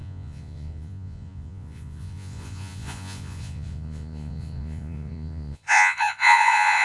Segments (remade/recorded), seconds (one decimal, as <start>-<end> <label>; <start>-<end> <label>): 0.0-6.8 remade